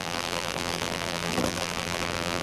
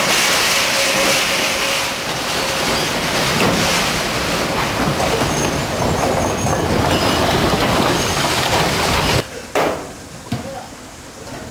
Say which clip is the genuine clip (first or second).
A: second